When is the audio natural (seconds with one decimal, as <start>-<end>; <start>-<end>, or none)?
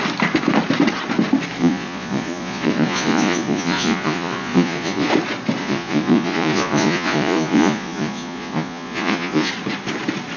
0.0-1.6; 5.1-5.6; 9.5-10.4